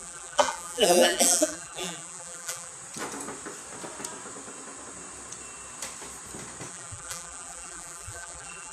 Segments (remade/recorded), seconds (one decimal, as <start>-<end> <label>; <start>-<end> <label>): 0.0-2.7 remade; 2.7-6.7 recorded; 6.7-8.7 remade